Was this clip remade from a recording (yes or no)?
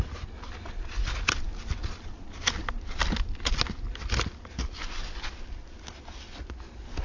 no